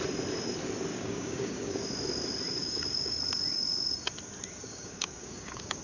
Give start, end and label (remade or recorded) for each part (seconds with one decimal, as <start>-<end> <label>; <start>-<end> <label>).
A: 0.0-0.9 recorded; 0.9-1.8 remade; 1.8-2.6 recorded; 2.6-3.2 remade; 3.2-4.7 recorded; 4.7-5.8 remade